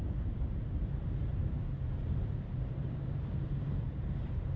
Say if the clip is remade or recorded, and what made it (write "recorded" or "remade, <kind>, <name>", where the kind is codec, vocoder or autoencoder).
remade, vocoder, BigVGAN v2